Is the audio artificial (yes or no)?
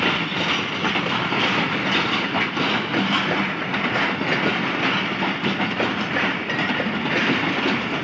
no